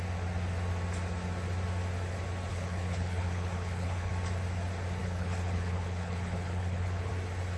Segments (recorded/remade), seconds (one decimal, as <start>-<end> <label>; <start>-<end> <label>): 0.0-2.5 recorded; 2.5-4.1 remade; 4.1-5.0 recorded; 5.0-7.1 remade; 7.1-7.6 recorded